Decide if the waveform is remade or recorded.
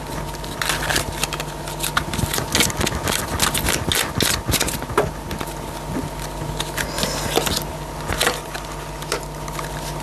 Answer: recorded